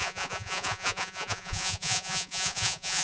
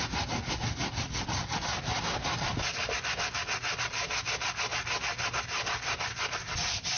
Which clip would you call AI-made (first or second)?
first